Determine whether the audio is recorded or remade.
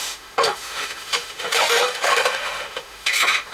remade